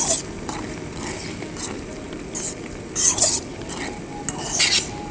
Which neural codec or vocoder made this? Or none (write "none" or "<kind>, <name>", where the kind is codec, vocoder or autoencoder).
none